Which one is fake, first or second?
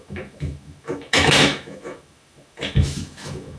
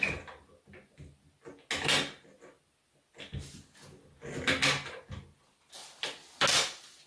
first